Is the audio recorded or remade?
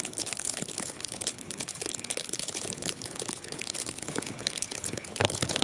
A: remade